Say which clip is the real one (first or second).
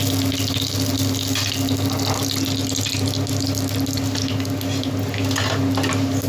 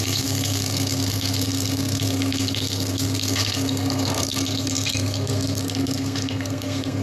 first